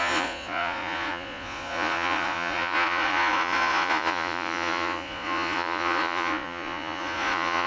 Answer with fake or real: fake